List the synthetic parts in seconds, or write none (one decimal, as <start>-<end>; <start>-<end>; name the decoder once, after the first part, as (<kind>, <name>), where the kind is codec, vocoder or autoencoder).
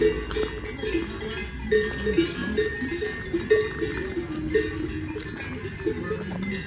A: 2.4-3.4 (vocoder, BigVGAN v2)